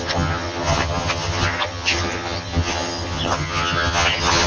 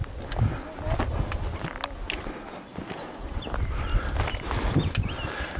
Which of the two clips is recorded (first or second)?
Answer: second